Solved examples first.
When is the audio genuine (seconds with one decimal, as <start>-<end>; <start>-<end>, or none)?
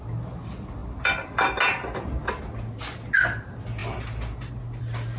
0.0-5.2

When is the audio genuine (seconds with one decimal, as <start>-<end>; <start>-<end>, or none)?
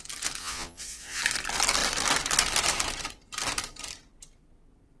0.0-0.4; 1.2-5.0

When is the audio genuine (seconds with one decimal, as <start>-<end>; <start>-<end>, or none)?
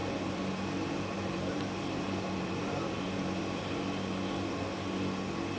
3.4-5.6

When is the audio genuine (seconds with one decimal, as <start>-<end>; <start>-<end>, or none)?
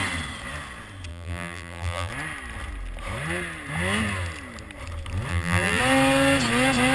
0.0-1.1; 2.1-5.3; 5.8-6.9